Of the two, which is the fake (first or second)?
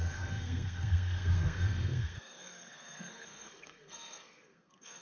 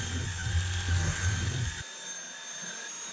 first